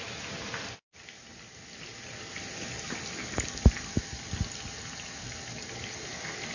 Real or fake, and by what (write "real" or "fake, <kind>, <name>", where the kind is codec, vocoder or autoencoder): real